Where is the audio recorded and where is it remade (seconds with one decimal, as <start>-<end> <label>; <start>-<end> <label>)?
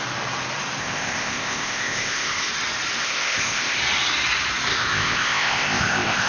0.0-0.8 recorded; 0.8-2.5 remade; 2.5-3.0 recorded; 3.0-3.8 remade; 3.8-4.7 recorded; 4.7-6.3 remade